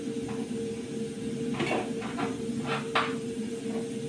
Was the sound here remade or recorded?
recorded